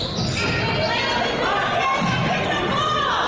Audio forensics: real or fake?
real